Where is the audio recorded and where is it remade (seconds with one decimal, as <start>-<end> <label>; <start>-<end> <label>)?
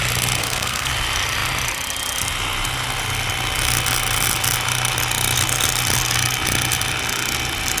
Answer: 0.0-0.4 recorded; 0.4-0.9 remade; 0.9-7.8 recorded